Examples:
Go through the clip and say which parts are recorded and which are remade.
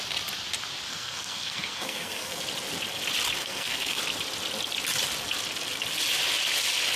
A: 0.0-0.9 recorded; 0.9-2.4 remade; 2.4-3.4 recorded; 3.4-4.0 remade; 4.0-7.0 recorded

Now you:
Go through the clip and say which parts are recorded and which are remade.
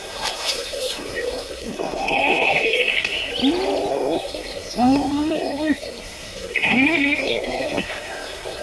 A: 0.0-3.3 remade; 3.3-3.9 recorded; 3.9-8.6 remade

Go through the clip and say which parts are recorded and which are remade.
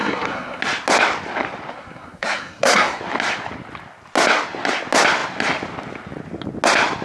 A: 0.0-0.6 remade; 0.6-1.7 recorded; 1.7-3.0 remade; 3.0-7.0 recorded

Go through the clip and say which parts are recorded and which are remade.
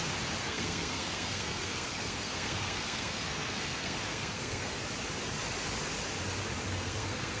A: 0.0-0.4 recorded; 0.4-4.8 remade; 4.8-6.6 recorded; 6.6-7.4 remade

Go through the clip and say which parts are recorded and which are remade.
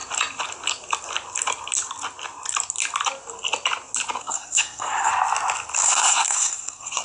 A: 0.0-4.2 recorded; 4.2-5.1 remade; 5.1-5.8 recorded; 5.8-7.0 remade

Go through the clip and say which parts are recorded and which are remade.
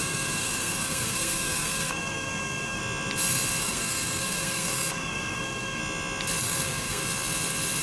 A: 0.0-2.8 remade; 2.8-3.6 recorded; 3.6-5.8 remade; 5.8-6.4 recorded; 6.4-7.0 remade; 7.0-7.8 recorded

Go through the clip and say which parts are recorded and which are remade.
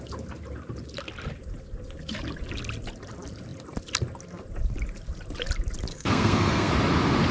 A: 0.0-5.9 recorded; 5.9-6.7 remade; 6.7-7.3 recorded